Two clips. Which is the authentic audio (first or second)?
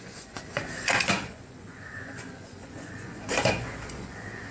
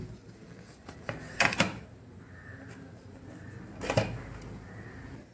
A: second